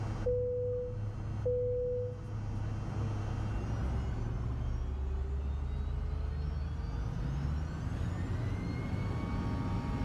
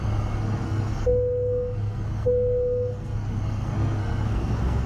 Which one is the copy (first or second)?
second